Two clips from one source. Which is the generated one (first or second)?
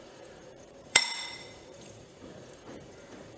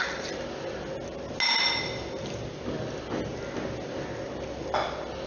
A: first